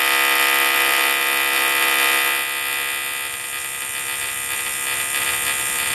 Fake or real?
real